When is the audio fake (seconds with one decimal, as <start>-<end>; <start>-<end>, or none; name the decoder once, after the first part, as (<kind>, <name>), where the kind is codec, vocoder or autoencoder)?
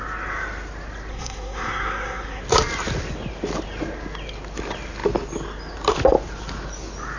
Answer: 1.1-2.4 (codec, SNAC)